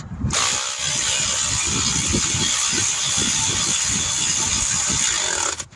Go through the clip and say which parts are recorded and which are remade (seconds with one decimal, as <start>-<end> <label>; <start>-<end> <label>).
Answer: 0.0-5.8 recorded